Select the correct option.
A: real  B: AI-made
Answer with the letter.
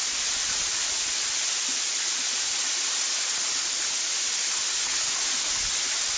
A